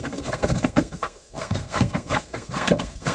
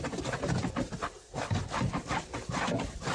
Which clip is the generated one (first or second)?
first